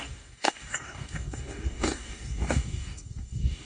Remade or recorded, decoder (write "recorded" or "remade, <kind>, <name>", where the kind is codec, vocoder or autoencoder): remade, codec, DAC